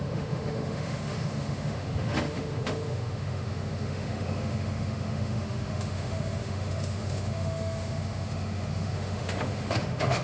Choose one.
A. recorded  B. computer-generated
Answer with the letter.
B